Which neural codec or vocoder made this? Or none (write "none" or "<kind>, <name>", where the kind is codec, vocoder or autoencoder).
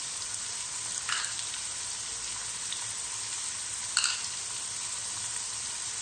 none